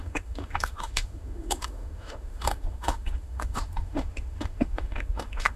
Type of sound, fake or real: fake